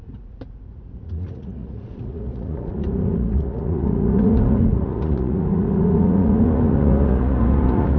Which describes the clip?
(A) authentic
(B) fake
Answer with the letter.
B